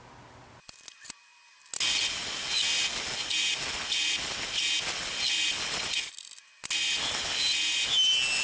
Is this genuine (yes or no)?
yes